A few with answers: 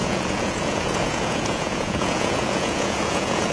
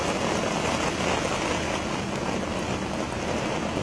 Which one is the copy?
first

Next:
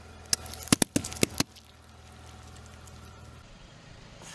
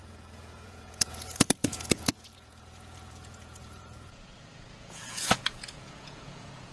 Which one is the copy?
second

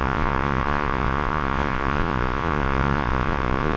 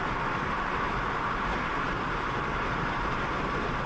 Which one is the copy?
first